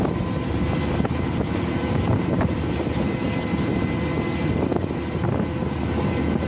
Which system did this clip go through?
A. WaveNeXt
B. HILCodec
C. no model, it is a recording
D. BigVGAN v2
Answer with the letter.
C